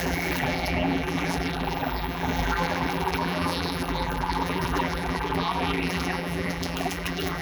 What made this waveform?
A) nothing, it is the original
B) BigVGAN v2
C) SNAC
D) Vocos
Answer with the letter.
B